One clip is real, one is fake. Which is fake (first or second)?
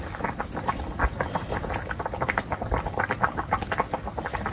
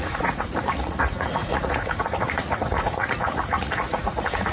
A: second